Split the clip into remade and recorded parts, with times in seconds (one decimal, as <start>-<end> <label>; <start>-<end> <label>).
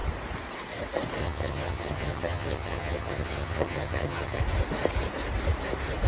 0.0-1.2 recorded; 1.2-4.4 remade; 4.4-6.1 recorded